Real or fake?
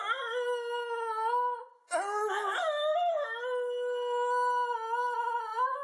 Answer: real